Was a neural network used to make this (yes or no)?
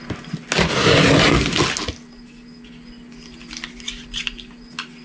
no